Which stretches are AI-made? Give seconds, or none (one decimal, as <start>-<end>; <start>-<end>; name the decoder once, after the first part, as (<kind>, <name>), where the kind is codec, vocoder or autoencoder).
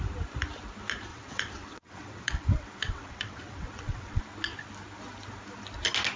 1.1-4.2 (vocoder, WaveNeXt)